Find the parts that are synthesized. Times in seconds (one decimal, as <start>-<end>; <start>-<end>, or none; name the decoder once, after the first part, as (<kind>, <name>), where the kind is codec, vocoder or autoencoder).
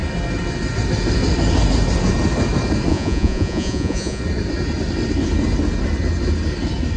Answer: 2.9-4.2 (vocoder, Vocos)